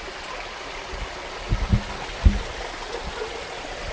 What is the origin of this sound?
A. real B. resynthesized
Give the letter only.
A